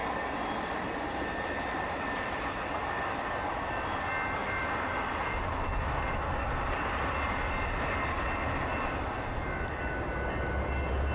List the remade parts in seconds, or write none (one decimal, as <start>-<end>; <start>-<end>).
0.0-2.4; 4.4-5.4; 8.4-9.2